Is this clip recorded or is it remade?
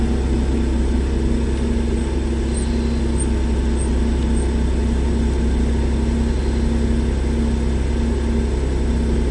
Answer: recorded